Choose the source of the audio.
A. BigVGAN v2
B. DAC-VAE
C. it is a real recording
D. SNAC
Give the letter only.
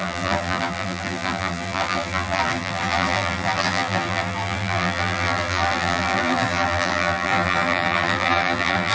A